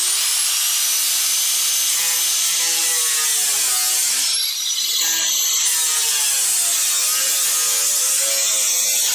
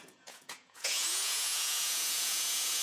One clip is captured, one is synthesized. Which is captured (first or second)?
first